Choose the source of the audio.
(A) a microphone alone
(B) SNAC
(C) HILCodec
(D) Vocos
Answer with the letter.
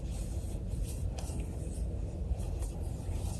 A